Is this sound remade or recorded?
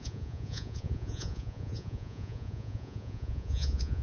remade